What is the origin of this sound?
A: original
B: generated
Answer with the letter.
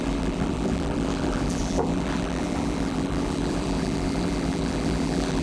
B